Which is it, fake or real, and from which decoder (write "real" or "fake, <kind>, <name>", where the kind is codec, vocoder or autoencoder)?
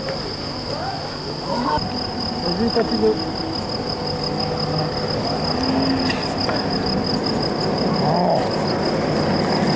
real